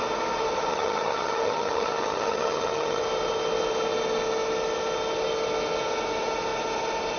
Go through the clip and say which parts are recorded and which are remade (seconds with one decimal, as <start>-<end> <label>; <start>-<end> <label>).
0.0-0.7 recorded; 0.7-3.0 remade; 3.0-7.2 recorded